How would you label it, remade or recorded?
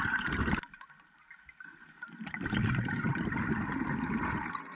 recorded